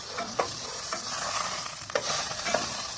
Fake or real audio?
fake